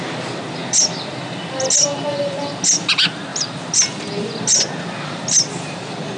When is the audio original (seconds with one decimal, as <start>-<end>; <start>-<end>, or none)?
0.0-6.2